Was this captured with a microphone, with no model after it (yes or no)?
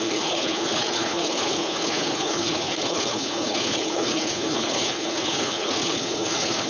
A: no